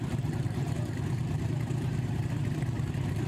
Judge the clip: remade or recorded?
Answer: remade